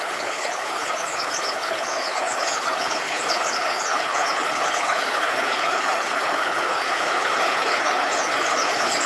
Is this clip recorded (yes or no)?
no